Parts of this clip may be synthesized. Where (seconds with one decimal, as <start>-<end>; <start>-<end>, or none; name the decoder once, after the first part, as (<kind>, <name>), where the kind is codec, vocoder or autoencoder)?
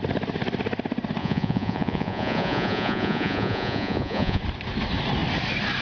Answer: 1.2-4.4 (vocoder, Vocos)